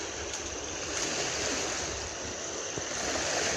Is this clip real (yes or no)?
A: yes